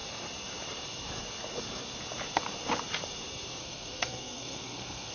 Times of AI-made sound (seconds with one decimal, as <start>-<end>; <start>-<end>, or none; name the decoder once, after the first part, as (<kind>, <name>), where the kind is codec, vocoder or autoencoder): 3.6-5.1 (codec, SNAC)